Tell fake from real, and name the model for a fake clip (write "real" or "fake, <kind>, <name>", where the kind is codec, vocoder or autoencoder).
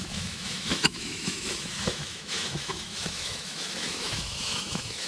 fake, autoencoder, DAC-VAE